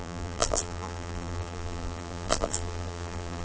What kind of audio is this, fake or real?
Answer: fake